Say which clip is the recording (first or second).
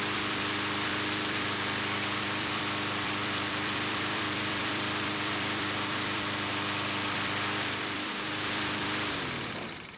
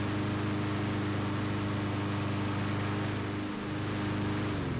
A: second